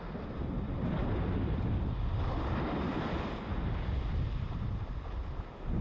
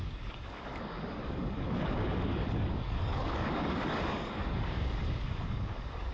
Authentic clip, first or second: first